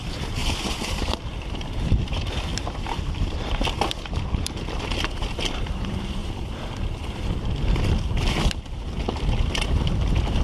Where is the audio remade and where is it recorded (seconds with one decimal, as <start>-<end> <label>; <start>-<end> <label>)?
0.0-0.4 remade; 0.4-1.1 recorded; 1.1-6.2 remade; 6.2-7.2 recorded; 7.2-10.4 remade